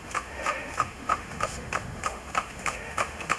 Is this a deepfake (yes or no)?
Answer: yes